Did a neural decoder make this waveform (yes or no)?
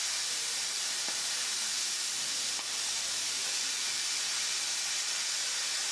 no